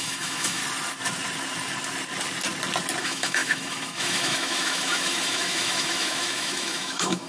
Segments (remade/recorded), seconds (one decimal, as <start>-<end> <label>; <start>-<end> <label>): 0.0-0.6 remade; 0.6-3.0 recorded; 3.0-7.3 remade